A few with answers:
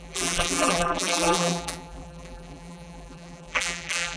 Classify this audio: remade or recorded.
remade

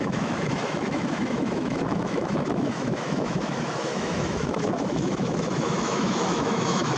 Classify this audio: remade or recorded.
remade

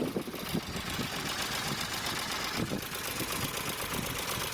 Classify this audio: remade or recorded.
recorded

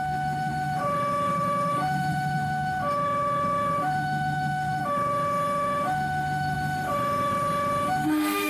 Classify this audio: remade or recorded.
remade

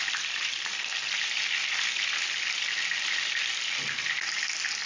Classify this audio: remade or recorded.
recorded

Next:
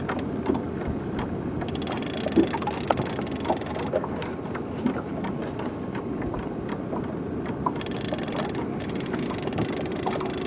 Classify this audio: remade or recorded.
recorded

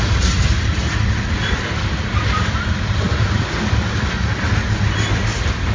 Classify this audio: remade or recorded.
recorded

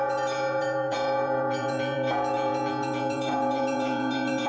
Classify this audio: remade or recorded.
remade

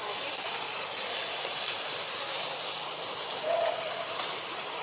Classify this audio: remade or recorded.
recorded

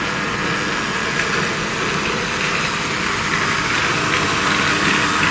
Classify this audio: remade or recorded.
recorded